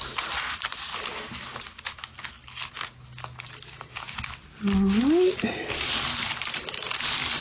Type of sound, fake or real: real